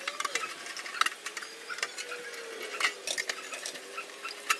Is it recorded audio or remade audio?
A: recorded